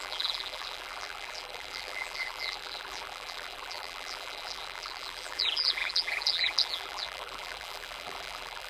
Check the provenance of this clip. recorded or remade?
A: remade